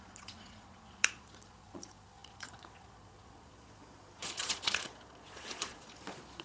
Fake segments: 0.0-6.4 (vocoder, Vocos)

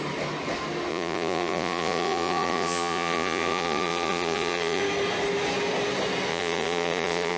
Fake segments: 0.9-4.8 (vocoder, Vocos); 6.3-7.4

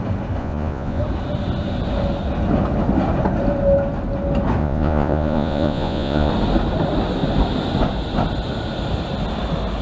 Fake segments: 0.4-1.0 (vocoder, Vocos); 4.6-6.3